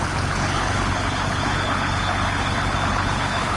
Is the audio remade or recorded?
remade